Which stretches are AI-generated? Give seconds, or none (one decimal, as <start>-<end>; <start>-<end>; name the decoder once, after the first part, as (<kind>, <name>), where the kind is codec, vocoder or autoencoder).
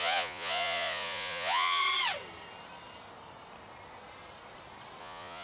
0.0-1.8 (vocoder, Vocos); 5.0-5.4